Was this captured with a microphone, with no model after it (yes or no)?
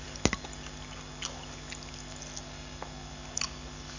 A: yes